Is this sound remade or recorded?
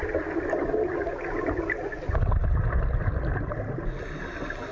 recorded